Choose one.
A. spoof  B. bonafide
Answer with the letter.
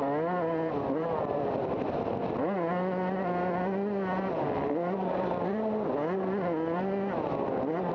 A